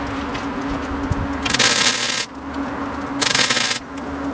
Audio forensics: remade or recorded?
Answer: recorded